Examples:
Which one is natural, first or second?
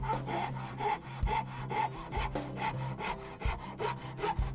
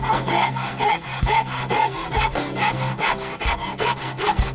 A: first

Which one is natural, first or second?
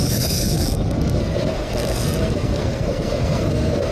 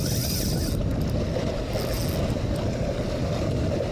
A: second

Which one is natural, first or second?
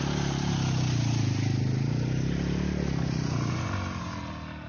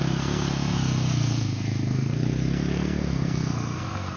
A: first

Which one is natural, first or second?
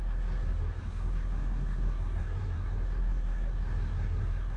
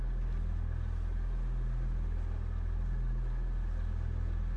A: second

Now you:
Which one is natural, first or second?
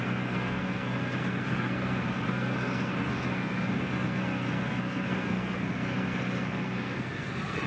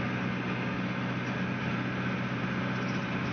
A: second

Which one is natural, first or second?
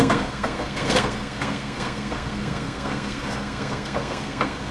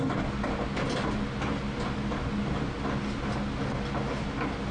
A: second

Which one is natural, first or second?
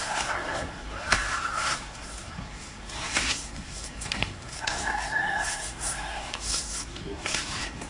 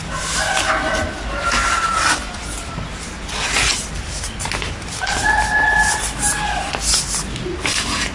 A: second